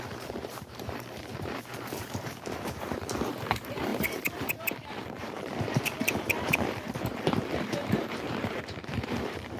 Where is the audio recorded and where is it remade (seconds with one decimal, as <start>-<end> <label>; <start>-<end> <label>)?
0.0-9.6 remade